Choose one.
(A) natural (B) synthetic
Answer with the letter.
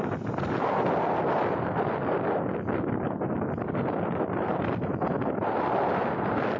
A